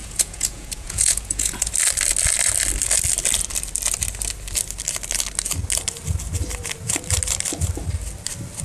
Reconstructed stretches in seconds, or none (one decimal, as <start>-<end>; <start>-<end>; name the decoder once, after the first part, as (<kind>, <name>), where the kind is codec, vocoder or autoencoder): 0.0-1.7 (vocoder, Vocos)